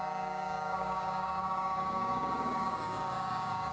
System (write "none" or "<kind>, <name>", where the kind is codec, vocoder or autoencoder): codec, DAC